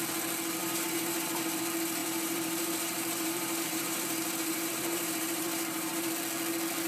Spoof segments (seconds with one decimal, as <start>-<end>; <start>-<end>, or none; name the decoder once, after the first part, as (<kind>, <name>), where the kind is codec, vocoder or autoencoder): 0.6-1.6 (vocoder, BigVGAN v2); 2.0-6.1